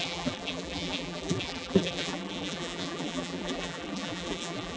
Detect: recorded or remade remade